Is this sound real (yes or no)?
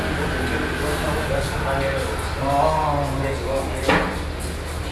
yes